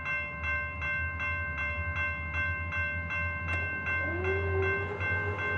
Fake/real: real